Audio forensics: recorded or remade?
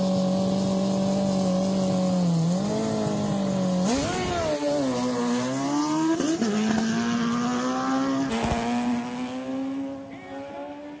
recorded